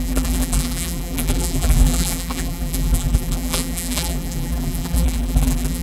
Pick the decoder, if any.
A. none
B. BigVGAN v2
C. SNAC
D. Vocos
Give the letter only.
B